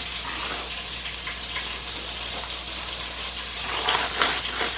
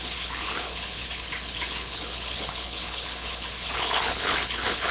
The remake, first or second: second